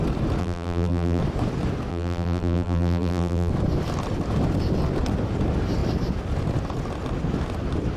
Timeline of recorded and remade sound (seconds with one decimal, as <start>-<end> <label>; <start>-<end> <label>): 0.0-0.4 recorded; 0.4-1.2 remade; 1.2-1.9 recorded; 1.9-3.5 remade; 3.5-8.0 recorded